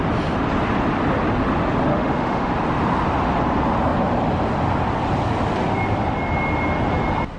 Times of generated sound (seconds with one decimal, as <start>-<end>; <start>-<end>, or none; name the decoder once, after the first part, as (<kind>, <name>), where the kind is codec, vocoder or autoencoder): 1.9-2.5 (autoencoder, DAC-VAE)